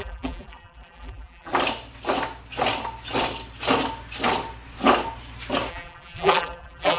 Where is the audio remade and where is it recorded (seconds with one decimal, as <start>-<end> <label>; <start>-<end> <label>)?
0.0-1.5 remade; 1.5-5.7 recorded; 5.7-7.0 remade

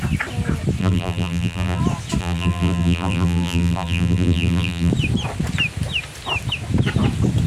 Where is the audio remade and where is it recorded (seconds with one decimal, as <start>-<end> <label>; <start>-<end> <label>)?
0.0-0.8 recorded; 0.8-1.8 remade; 1.8-2.2 recorded; 2.2-4.9 remade; 4.9-7.5 recorded

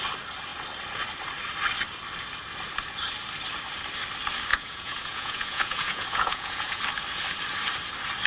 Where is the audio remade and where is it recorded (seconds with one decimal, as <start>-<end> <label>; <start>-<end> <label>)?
0.0-4.5 recorded; 4.5-6.8 remade; 6.8-8.3 recorded

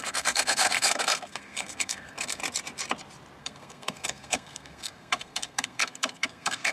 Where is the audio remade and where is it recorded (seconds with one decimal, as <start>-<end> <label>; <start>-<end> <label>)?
0.0-2.4 remade; 2.4-3.4 recorded; 3.4-6.7 remade

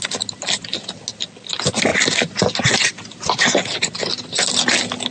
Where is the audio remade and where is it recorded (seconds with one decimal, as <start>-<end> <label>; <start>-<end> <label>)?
0.0-5.1 recorded

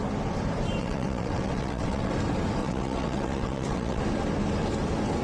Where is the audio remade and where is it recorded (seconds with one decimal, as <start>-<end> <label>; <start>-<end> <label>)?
0.0-0.8 recorded; 0.8-2.1 remade; 2.1-2.6 recorded; 2.6-4.0 remade; 4.0-5.2 recorded

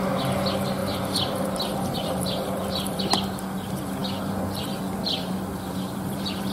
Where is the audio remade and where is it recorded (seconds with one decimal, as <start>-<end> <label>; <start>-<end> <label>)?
0.0-0.8 recorded; 0.8-3.0 remade; 3.0-6.5 recorded

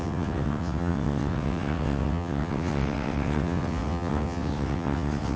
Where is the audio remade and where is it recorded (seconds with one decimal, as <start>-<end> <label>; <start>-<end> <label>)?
0.0-5.4 remade